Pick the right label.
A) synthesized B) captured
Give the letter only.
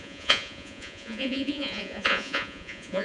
A